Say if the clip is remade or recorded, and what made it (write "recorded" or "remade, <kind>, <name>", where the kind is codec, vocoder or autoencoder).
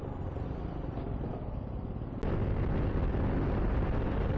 recorded